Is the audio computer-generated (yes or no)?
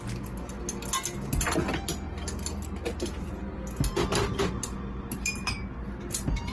no